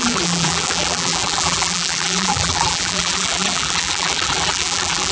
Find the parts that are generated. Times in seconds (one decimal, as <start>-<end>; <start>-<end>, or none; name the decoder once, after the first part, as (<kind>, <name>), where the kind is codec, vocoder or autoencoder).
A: 0.0-5.1 (vocoder, BigVGAN v2)